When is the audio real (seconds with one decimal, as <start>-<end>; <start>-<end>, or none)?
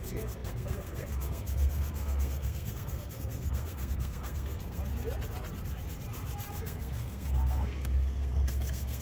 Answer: 4.8-6.5